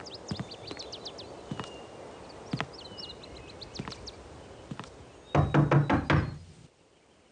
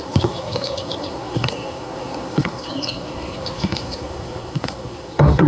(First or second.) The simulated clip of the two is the second